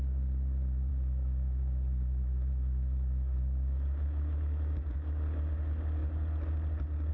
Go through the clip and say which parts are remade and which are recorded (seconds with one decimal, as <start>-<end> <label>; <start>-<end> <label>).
0.0-0.9 recorded; 0.9-5.2 remade; 5.2-7.1 recorded